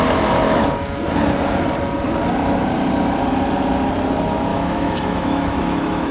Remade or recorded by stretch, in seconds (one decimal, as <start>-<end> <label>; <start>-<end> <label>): 0.0-4.5 recorded; 4.5-6.1 remade